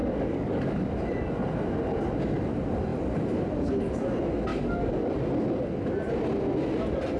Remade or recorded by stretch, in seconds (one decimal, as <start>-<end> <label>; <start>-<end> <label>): 0.0-0.9 remade; 0.9-4.5 recorded; 4.5-5.1 remade; 5.1-7.2 recorded